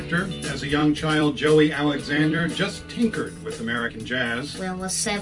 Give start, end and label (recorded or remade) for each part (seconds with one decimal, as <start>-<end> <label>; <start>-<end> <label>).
0.0-0.8 recorded; 0.8-3.9 remade; 3.9-5.2 recorded